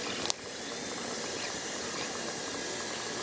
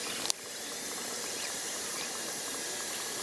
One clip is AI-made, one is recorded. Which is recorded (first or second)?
first